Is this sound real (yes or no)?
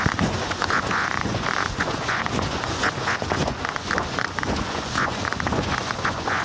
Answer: no